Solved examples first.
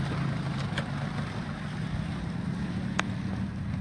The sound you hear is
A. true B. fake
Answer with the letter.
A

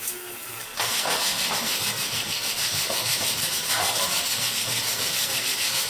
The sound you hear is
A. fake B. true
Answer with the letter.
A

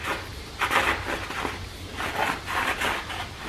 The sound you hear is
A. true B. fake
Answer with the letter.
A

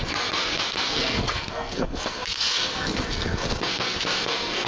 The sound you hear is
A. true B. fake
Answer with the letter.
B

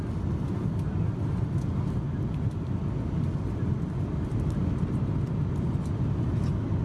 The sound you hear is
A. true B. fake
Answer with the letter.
A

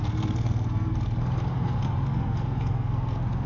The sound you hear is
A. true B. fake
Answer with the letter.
B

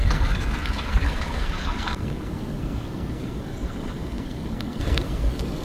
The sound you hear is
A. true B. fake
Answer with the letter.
B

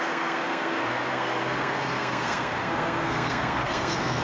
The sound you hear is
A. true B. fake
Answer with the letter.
B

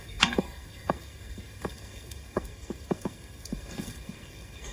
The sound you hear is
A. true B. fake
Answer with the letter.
B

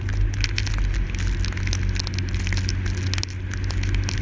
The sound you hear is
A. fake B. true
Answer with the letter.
B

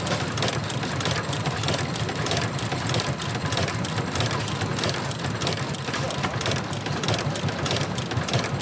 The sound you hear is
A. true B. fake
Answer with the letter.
A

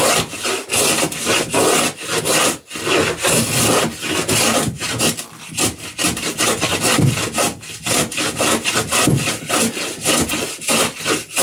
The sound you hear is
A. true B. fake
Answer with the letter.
A